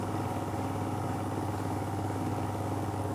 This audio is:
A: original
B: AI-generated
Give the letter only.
B